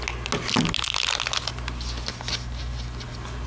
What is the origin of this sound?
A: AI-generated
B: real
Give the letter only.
B